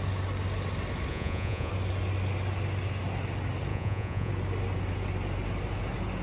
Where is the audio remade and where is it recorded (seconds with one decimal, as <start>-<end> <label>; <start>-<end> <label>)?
0.0-1.1 recorded; 1.1-1.7 remade; 1.7-3.7 recorded; 3.7-4.3 remade; 4.3-6.2 recorded